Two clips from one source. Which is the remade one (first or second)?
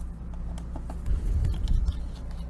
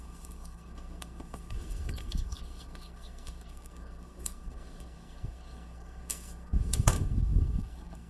second